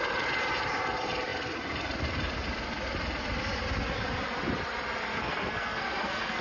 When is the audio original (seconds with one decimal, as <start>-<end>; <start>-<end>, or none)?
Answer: 0.0-5.2